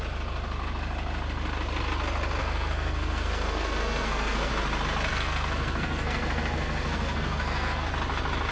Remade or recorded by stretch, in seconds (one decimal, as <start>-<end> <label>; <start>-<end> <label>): 0.0-2.4 recorded; 2.4-4.5 remade; 4.5-5.1 recorded; 5.1-7.9 remade; 7.9-8.5 recorded